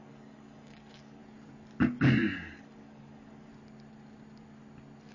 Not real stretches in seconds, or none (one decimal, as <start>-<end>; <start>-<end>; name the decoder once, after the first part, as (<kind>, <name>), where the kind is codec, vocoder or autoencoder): 0.0-1.2 (codec, DAC); 2.1-3.5